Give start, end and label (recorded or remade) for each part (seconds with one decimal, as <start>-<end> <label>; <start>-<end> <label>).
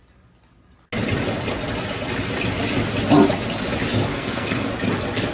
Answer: 0.0-4.1 recorded; 4.1-4.7 remade; 4.7-5.3 recorded